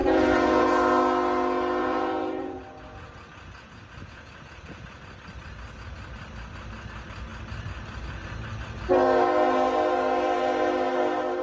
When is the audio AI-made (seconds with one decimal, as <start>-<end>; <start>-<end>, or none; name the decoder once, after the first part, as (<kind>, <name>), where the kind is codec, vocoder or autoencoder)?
0.0-0.7 (vocoder, Vocos); 1.8-5.0

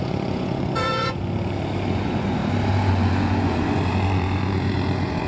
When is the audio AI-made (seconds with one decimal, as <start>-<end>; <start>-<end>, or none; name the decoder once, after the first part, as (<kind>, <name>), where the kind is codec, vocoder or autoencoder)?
0.0-1.2 (vocoder, Vocos); 1.9-2.4; 2.9-5.3

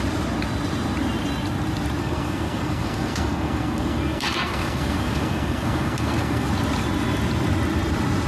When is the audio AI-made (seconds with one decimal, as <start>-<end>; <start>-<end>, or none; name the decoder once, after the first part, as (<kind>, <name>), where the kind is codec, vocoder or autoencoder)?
2.0-6.5 (codec, SNAC)

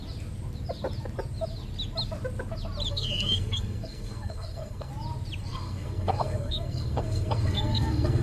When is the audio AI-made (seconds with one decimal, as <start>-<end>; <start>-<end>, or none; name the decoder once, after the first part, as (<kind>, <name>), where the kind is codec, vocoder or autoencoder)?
2.9-4.9 (codec, SNAC); 5.4-8.2

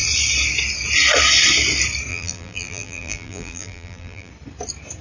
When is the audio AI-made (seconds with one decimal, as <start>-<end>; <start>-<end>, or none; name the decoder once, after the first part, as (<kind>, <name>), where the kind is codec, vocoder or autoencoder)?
2.1-4.3 (vocoder, BigVGAN v2)

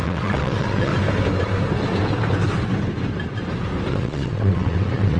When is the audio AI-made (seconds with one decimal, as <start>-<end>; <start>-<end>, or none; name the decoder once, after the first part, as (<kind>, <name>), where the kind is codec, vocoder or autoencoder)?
0.0-0.9 (vocoder, WaveNeXt); 3.9-5.2